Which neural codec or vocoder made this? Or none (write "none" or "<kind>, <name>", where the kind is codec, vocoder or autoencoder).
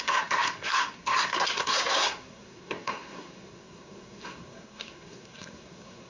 codec, SNAC